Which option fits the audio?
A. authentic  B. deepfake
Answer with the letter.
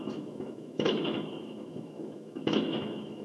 B